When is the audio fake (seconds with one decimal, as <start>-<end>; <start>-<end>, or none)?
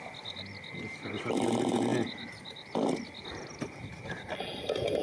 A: none